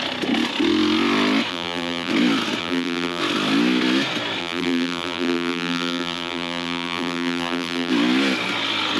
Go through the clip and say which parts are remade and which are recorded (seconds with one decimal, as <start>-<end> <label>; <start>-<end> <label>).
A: 0.0-1.5 recorded; 1.5-2.1 remade; 2.1-2.6 recorded; 2.6-3.2 remade; 3.2-4.4 recorded; 4.4-7.9 remade; 7.9-9.0 recorded